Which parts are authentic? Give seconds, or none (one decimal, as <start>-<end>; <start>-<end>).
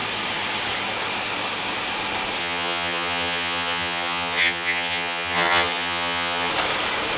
0.0-2.4; 6.5-7.2